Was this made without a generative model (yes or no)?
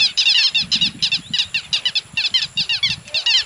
yes